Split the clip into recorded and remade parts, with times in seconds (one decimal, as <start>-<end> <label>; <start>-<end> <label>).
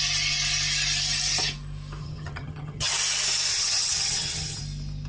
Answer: 0.0-2.0 recorded; 2.0-2.9 remade; 2.9-3.5 recorded; 3.5-4.6 remade; 4.6-5.1 recorded